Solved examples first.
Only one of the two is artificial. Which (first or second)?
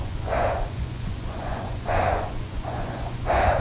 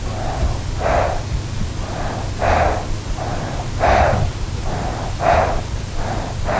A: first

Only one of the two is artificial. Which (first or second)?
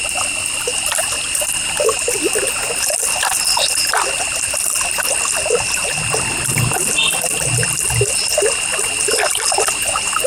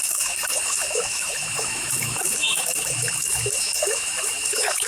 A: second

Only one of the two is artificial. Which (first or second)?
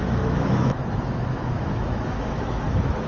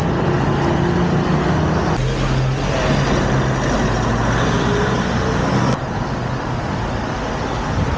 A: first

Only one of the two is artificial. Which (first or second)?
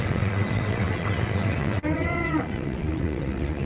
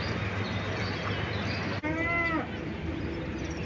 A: first